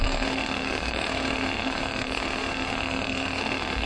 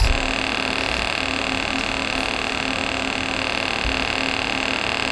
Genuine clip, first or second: second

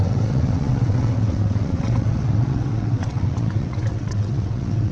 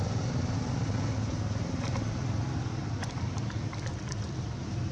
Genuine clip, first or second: second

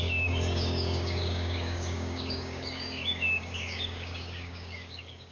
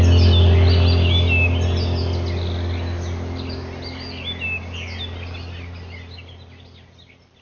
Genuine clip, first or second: second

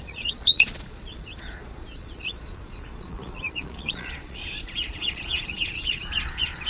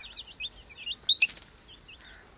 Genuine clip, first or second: second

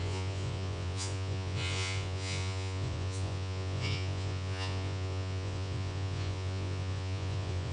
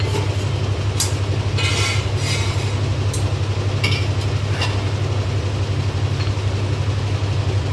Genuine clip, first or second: second